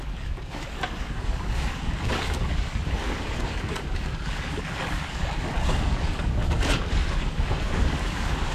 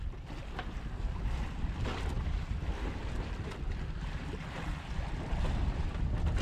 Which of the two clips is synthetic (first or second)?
first